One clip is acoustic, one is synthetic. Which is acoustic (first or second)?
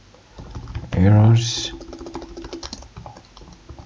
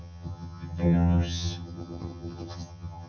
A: first